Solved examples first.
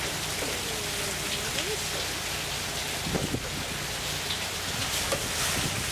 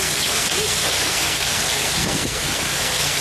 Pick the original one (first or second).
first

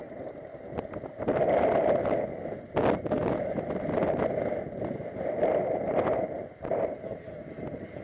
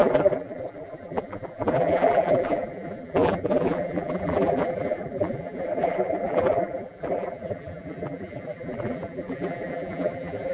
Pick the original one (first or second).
first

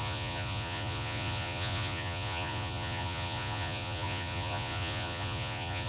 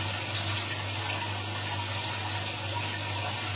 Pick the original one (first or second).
second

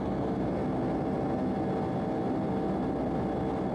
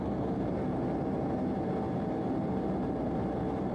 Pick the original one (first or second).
first